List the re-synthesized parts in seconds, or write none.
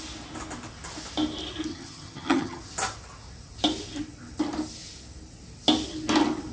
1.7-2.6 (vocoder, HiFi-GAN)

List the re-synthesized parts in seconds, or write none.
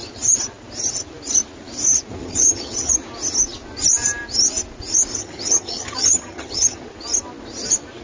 2.2-2.9 (vocoder, HiFi-GAN); 5.1-6.8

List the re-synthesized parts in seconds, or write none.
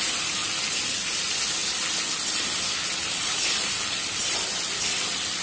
none